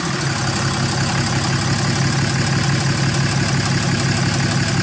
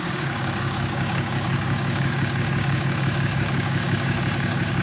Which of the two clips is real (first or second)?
first